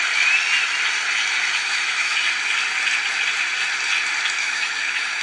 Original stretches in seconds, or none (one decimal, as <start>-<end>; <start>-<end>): 0.0-1.6; 2.2-4.4